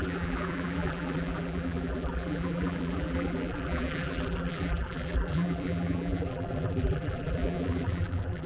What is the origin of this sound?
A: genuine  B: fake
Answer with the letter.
B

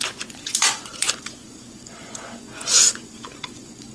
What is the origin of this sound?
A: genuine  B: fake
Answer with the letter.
B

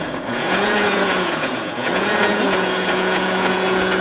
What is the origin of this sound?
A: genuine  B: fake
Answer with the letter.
B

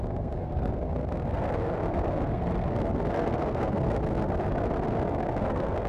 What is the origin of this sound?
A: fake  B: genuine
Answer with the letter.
A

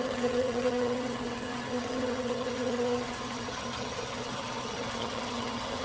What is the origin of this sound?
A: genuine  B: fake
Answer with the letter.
B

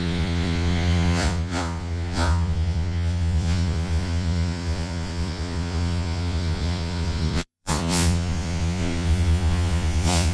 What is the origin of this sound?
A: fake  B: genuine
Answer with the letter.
A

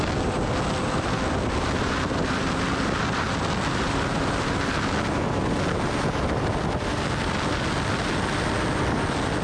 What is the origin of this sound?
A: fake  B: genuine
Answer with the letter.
B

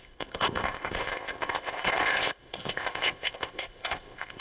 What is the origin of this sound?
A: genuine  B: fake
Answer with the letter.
B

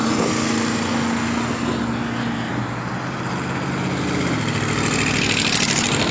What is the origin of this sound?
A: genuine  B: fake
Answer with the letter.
A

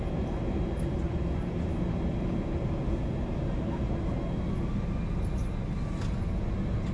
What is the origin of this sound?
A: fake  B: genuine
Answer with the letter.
B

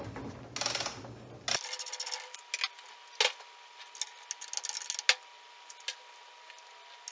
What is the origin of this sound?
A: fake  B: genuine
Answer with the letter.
B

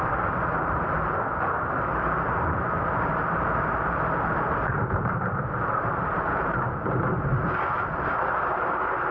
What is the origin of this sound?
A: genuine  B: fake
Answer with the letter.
B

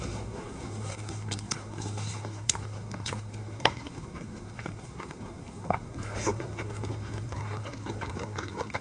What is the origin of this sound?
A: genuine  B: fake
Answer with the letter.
B